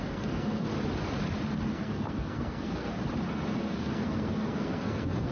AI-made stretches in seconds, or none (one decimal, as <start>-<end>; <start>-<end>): 0.0-0.7; 1.7-3.0; 3.6-5.3